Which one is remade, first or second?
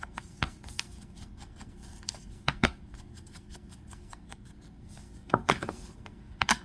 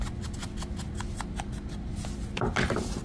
first